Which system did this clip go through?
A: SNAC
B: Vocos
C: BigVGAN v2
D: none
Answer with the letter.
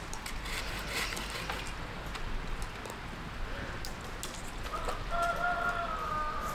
D